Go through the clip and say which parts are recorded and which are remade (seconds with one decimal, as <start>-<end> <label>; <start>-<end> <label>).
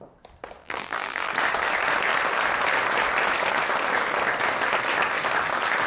0.0-0.6 recorded; 0.6-1.3 remade; 1.3-5.9 recorded